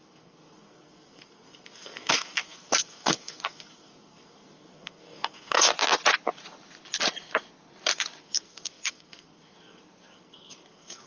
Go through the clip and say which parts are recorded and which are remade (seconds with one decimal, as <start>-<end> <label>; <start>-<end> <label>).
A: 0.0-5.7 remade; 5.7-8.2 recorded; 8.2-11.1 remade

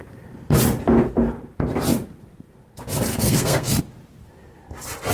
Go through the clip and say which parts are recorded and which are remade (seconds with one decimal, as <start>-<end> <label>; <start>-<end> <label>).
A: 0.0-3.1 recorded; 3.1-3.8 remade; 3.8-5.1 recorded

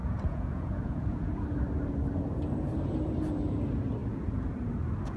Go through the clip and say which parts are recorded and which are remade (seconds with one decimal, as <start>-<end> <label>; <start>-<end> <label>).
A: 0.0-1.4 remade; 1.4-5.2 recorded

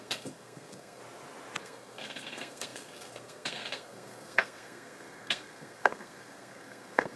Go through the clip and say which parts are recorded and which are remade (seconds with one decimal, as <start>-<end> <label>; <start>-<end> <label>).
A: 0.0-1.0 remade; 1.0-1.6 recorded; 1.6-7.2 remade

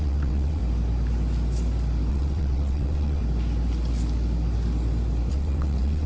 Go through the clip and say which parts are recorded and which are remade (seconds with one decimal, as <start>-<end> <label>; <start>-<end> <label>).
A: 0.0-0.6 remade; 0.6-2.1 recorded; 2.1-3.2 remade; 3.2-5.3 recorded; 5.3-6.1 remade

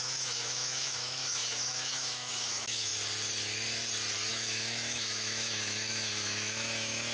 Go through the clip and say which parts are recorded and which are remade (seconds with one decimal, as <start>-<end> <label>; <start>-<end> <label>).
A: 0.0-2.9 remade; 2.9-4.3 recorded; 4.3-7.1 remade

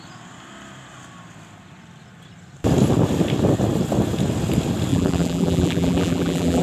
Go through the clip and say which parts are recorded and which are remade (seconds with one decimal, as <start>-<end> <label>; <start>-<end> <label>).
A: 0.0-4.9 recorded; 4.9-6.6 remade

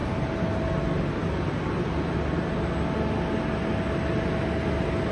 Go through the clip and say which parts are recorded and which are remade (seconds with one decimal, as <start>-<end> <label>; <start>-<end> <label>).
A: 0.0-5.1 recorded